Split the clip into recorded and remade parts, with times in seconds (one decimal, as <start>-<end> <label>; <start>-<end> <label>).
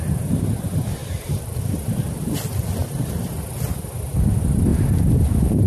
0.0-1.0 recorded; 1.0-1.6 remade; 1.6-2.8 recorded; 2.8-3.3 remade; 3.3-5.7 recorded